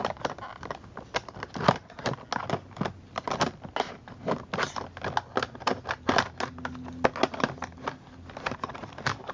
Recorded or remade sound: recorded